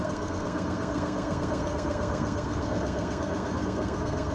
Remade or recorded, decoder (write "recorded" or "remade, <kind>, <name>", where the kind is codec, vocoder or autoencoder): remade, codec, SNAC